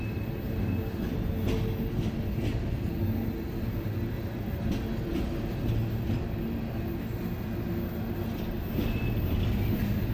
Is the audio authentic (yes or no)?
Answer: yes